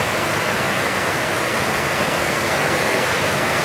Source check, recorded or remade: remade